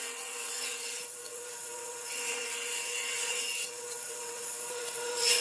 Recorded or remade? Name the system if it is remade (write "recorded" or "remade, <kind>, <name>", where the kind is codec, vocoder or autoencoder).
remade, vocoder, WaveNeXt